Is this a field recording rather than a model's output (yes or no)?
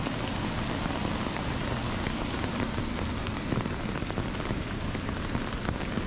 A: yes